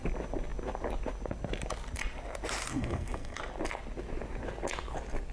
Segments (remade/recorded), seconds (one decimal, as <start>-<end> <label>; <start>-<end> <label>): 0.0-2.7 recorded; 2.7-3.4 remade; 3.4-5.3 recorded